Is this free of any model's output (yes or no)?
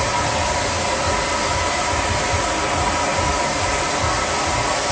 yes